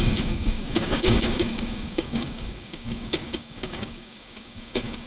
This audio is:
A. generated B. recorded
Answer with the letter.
A